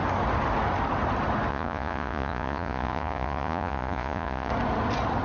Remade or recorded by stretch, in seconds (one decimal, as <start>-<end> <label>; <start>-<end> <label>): 0.0-1.5 recorded; 1.5-4.5 remade; 4.5-5.2 recorded